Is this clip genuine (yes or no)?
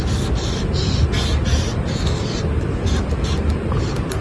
yes